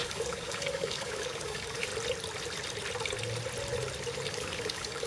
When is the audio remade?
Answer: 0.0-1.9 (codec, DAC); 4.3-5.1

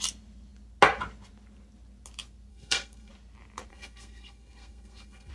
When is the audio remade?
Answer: 2.5-3.1 (codec, SNAC); 3.7-5.3

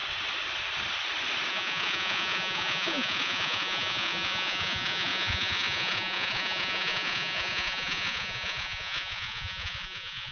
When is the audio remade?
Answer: 1.5-10.3 (vocoder, Vocos)

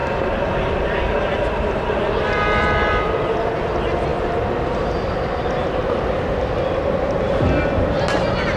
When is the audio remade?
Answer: 0.0-3.6 (vocoder, BigVGAN v2)

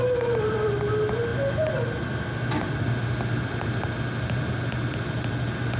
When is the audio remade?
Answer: none